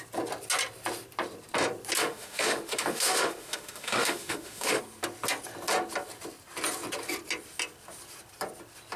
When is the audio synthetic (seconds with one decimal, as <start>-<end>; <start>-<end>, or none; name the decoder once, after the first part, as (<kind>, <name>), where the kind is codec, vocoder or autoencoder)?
2.0-4.8 (autoencoder, DAC-VAE)